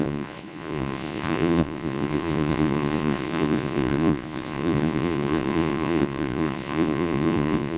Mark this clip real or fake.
fake